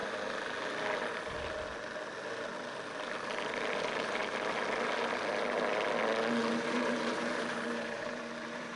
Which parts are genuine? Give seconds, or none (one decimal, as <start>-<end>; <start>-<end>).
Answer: 0.0-3.8; 4.2-6.5